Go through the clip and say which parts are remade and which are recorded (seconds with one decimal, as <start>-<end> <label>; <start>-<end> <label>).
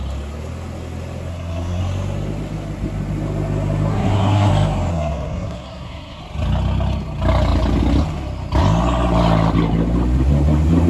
0.0-1.3 recorded; 1.3-1.8 remade; 1.8-3.9 recorded; 3.9-4.5 remade; 4.5-4.9 recorded; 4.9-6.2 remade; 6.2-10.9 recorded